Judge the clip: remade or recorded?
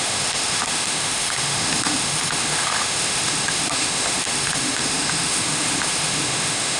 remade